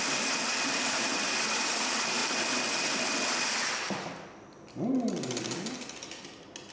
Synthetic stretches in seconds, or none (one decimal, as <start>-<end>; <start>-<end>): none